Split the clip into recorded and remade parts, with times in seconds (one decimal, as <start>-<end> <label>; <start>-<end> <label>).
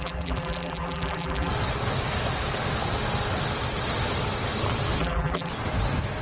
0.0-1.5 remade; 1.5-5.0 recorded; 5.0-5.5 remade; 5.5-6.2 recorded